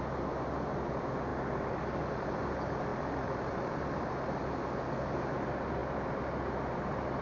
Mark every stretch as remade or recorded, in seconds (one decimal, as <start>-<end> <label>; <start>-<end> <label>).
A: 0.0-7.2 recorded